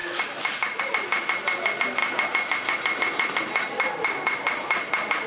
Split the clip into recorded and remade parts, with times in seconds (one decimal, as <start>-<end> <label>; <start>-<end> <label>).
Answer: 0.0-2.0 remade; 2.0-5.3 recorded